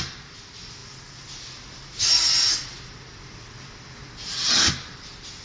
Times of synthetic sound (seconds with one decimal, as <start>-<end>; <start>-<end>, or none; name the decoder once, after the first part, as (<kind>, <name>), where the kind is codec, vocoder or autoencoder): none